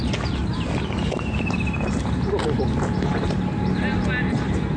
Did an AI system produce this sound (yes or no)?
no